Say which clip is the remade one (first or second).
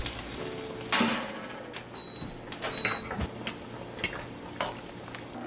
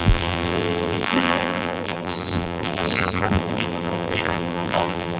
second